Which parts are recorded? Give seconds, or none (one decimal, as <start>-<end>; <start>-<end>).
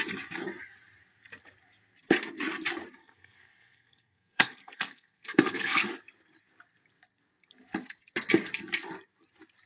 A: 0.0-3.0; 5.9-9.7